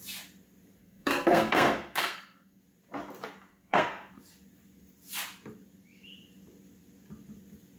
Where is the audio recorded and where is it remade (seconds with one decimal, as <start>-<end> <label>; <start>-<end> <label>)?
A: 0.0-0.8 recorded; 0.8-2.6 remade; 2.6-3.5 recorded; 3.5-4.2 remade; 4.2-7.8 recorded

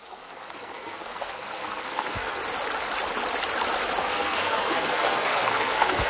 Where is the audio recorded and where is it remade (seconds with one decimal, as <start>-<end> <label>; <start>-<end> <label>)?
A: 0.0-2.4 remade; 2.4-4.0 recorded; 4.0-6.1 remade

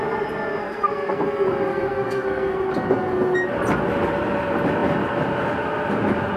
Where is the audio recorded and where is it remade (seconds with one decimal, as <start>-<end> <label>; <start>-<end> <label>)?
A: 0.0-0.6 recorded; 0.6-1.2 remade; 1.2-1.7 recorded; 1.7-2.7 remade; 2.7-6.4 recorded

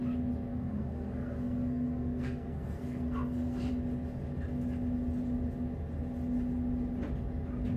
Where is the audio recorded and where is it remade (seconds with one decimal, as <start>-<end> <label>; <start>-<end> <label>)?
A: 0.0-0.5 recorded; 0.5-3.7 remade; 3.7-7.8 recorded

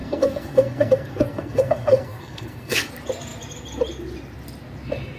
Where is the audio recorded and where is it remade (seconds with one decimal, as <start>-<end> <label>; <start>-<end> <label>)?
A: 0.0-2.9 remade; 2.9-5.2 recorded